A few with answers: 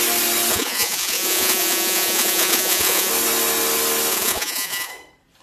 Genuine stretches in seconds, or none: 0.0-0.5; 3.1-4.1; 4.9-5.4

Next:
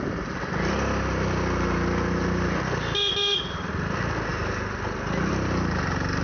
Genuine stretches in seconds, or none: 0.0-6.2